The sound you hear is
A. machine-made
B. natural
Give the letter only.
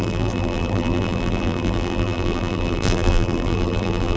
A